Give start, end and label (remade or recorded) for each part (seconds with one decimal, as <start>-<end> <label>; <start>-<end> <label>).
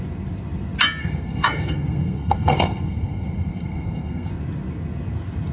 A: 0.0-1.0 recorded; 1.0-4.3 remade; 4.3-5.5 recorded